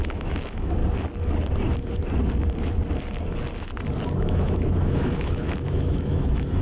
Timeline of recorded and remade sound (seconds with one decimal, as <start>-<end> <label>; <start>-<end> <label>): 0.0-0.8 remade; 0.8-4.2 recorded; 4.2-6.6 remade